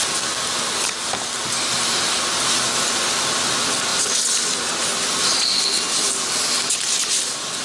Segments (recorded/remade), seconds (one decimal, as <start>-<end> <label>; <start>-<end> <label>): 0.0-7.6 recorded

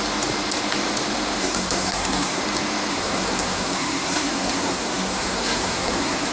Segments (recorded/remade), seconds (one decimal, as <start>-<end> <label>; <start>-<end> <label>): 0.0-1.4 recorded; 1.4-2.4 remade; 2.4-2.9 recorded; 2.9-6.3 remade

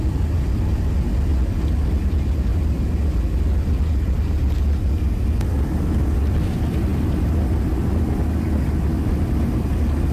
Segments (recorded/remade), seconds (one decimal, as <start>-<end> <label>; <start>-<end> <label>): 0.0-10.1 recorded

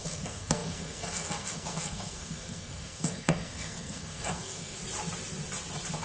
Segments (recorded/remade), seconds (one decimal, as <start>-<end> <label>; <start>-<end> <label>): 0.0-4.8 remade; 4.8-6.0 recorded

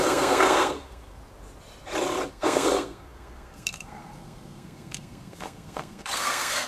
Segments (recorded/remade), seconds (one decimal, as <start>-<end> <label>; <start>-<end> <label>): 0.0-1.2 remade; 1.2-2.3 recorded; 2.3-6.7 remade

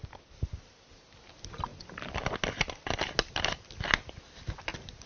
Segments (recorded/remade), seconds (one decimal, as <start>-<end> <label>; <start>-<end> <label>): 0.0-5.1 recorded

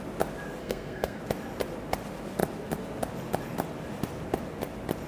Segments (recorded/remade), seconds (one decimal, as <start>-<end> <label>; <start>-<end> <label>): 0.0-0.6 recorded; 0.6-1.2 remade; 1.2-5.1 recorded

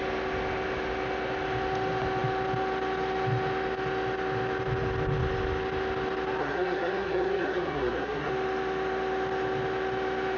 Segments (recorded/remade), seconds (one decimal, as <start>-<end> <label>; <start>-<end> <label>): 0.0-6.4 recorded; 6.4-8.3 remade; 8.3-10.4 recorded